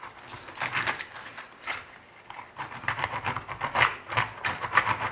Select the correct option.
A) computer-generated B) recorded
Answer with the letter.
B